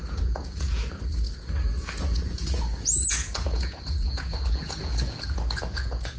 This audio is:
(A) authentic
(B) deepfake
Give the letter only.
B